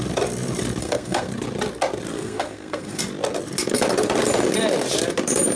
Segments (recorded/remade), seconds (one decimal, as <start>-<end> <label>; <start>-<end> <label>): 0.0-0.8 recorded; 0.8-1.3 remade; 1.3-2.1 recorded; 2.1-3.0 remade; 3.0-5.6 recorded